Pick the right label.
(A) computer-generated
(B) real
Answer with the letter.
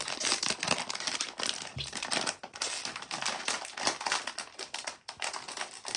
B